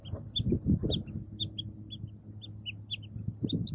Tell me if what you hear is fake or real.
real